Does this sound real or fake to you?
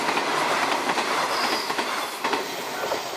real